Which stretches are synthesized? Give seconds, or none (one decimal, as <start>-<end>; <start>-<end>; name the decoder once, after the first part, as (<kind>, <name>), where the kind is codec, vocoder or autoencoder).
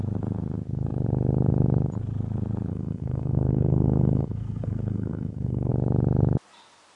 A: 2.7-5.7 (codec, SNAC)